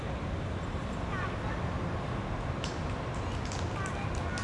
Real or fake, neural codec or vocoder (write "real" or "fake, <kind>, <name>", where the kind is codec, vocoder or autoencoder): real